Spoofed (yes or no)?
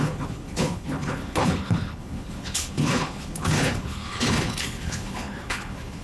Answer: yes